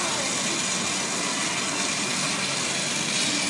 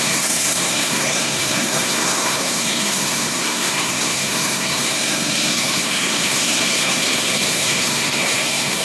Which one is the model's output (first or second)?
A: second